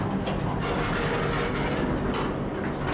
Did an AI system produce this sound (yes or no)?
no